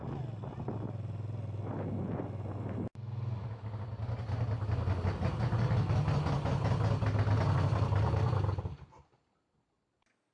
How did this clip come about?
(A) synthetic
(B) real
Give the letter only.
B